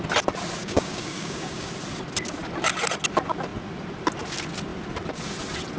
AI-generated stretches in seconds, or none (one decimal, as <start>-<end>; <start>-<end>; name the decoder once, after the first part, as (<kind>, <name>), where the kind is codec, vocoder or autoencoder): 0.6-1.7 (codec, DAC)